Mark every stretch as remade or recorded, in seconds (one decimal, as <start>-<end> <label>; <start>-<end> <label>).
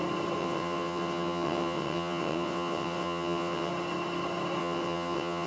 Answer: 0.0-0.4 recorded; 0.4-3.7 remade; 3.7-4.6 recorded; 4.6-5.5 remade